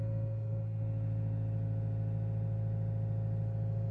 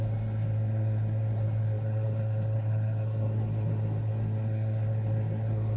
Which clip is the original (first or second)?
first